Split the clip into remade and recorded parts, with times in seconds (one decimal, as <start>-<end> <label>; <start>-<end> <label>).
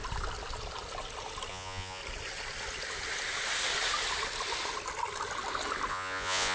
0.0-1.5 recorded; 1.5-2.0 remade; 2.0-5.9 recorded; 5.9-6.5 remade